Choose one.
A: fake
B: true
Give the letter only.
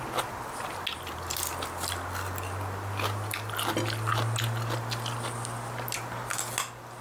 B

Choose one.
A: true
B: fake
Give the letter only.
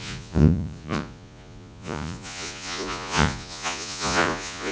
B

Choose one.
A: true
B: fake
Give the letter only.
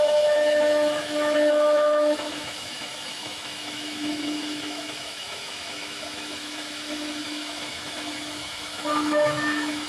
B